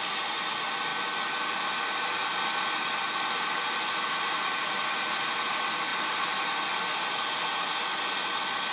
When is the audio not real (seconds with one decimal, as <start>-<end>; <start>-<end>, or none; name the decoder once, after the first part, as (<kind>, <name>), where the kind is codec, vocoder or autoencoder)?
none